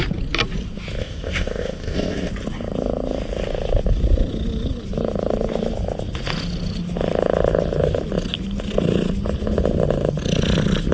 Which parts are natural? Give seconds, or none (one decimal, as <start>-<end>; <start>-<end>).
0.0-1.0; 2.3-10.9